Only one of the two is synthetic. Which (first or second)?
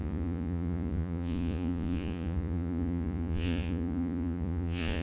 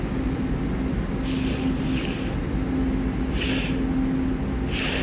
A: first